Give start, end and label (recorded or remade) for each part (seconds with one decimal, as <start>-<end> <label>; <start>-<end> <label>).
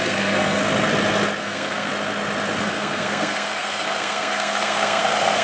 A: 0.0-0.6 remade; 0.6-1.4 recorded; 1.4-1.9 remade; 1.9-2.6 recorded; 2.6-5.4 remade